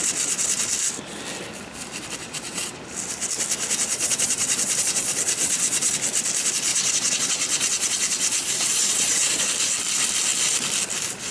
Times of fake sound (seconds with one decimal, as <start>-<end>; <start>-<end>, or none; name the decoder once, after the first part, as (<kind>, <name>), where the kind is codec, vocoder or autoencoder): 2.2-2.8 (vocoder, WaveNeXt); 3.9-5.9; 6.7-9.4